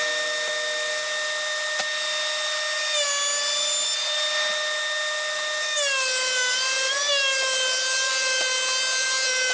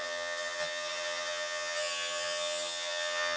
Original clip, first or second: first